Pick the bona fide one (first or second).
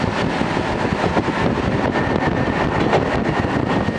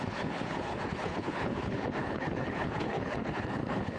first